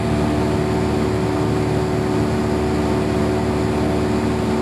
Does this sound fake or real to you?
real